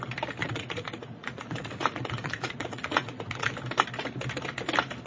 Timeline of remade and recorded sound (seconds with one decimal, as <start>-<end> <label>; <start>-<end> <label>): 0.0-0.4 recorded; 0.4-3.5 remade; 3.5-5.1 recorded